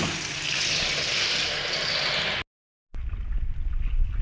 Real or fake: real